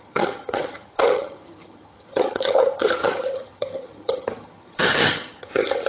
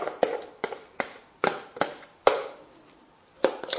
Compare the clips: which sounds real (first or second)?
second